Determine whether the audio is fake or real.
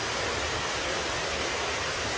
real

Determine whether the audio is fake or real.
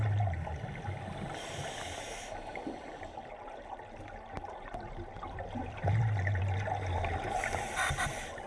real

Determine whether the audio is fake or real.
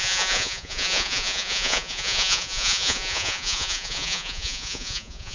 fake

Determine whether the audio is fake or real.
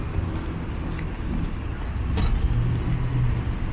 real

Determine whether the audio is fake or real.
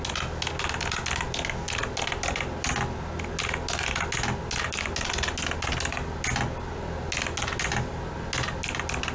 real